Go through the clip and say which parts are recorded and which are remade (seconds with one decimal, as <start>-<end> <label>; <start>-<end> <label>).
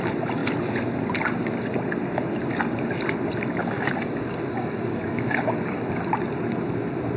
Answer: 0.0-3.6 recorded; 3.6-6.1 remade; 6.1-7.2 recorded